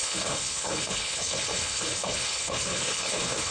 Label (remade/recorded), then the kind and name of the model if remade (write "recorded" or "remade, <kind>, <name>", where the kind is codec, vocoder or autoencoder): remade, codec, HILCodec